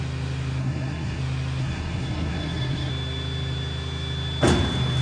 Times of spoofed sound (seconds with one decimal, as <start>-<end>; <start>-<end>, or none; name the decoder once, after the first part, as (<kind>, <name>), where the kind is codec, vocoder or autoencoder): 0.6-1.2 (codec, SNAC); 1.6-2.9